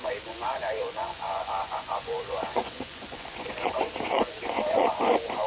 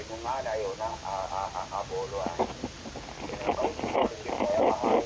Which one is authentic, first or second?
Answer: second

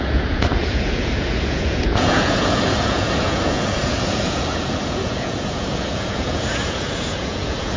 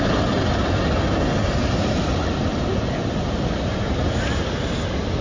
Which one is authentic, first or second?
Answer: second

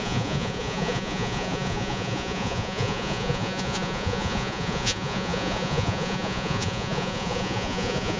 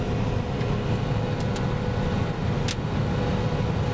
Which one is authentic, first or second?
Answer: second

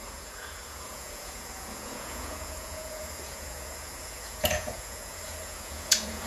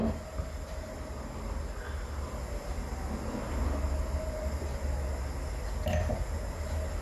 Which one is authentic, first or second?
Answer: second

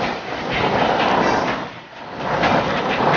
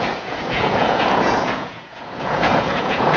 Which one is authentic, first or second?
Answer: first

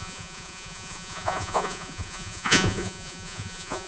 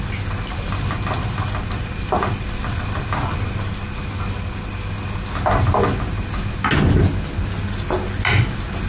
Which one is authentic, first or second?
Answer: second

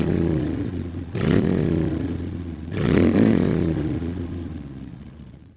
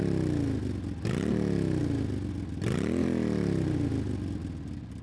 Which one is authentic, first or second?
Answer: second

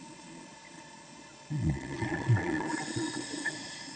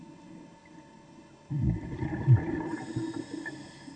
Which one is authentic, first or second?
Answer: second